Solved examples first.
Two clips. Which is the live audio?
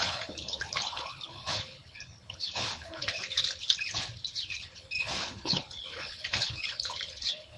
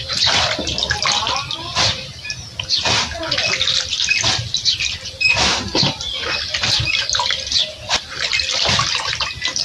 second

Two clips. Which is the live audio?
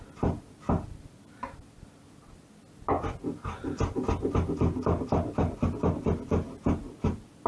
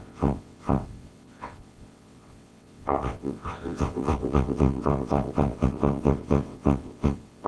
first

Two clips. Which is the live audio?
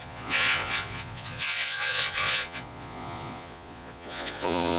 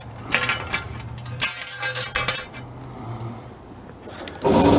second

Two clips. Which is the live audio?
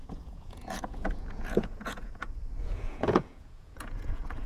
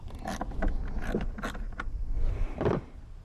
second